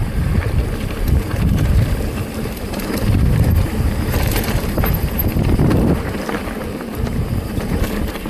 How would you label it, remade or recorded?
remade